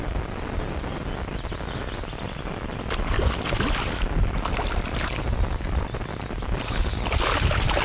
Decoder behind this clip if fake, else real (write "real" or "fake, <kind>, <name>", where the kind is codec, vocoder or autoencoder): real